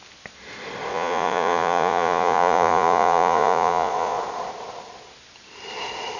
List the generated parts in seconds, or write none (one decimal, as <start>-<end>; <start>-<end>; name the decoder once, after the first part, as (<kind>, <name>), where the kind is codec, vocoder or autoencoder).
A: 0.9-4.2 (vocoder, Vocos)